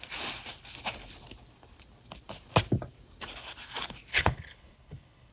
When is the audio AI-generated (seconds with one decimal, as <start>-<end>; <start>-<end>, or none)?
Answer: 4.1-5.3

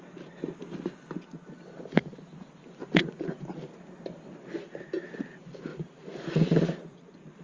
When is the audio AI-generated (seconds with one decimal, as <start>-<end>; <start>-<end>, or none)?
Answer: 2.8-3.4; 5.7-7.4

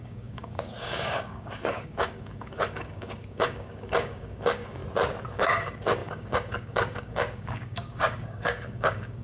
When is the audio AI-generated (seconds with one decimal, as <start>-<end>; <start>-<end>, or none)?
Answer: 0.0-4.8; 5.3-9.2

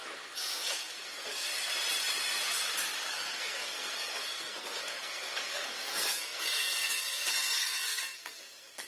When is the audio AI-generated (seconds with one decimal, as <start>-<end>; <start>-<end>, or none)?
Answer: 0.0-1.5; 3.1-8.9

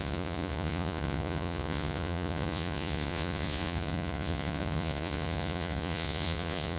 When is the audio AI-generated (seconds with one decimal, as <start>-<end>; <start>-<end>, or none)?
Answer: 0.0-6.8

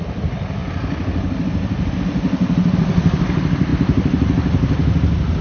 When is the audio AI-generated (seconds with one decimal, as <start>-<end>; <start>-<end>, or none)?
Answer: none